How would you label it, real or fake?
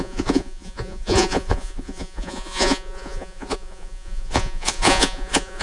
fake